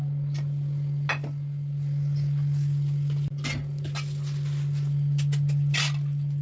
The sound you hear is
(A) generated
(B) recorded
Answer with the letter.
B